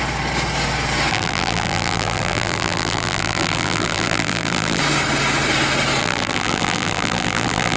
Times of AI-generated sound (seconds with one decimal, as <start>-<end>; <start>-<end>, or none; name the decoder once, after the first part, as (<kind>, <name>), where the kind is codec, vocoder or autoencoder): 1.1-4.8 (vocoder, BigVGAN v2); 6.0-7.8

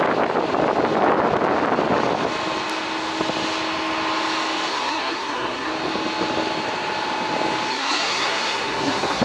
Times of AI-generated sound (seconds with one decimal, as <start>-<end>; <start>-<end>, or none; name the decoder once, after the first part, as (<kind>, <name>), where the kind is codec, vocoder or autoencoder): 4.7-5.7 (codec, SNAC); 7.7-9.2

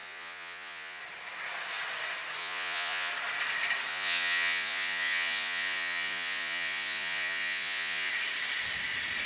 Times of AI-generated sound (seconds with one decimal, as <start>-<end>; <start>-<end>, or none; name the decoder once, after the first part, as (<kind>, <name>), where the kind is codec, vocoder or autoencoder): 0.0-1.0 (vocoder, Vocos); 2.4-3.1; 3.9-8.1